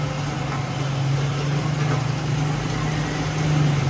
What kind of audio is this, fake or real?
real